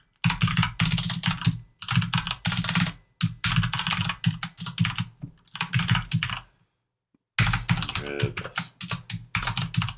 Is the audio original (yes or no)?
yes